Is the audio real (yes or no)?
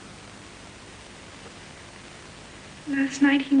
yes